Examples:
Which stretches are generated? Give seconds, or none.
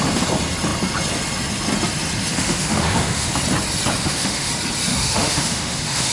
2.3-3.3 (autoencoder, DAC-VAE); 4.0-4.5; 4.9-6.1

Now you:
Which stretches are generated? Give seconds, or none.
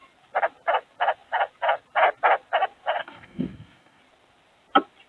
3.0-4.0 (codec, DAC)